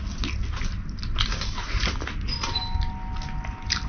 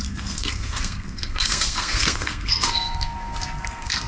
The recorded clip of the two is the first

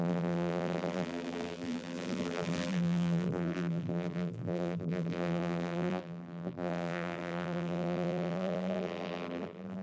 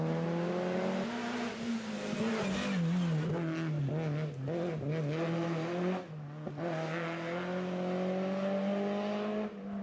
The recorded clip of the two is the second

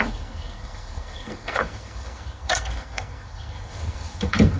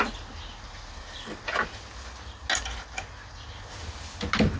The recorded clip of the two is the second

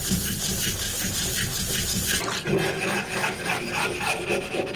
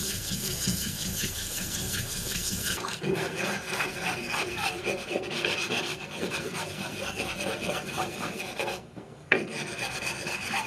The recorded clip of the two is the first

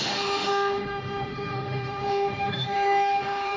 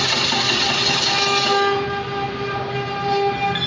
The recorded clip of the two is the second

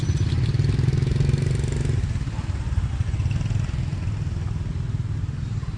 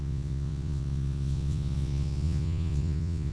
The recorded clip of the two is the first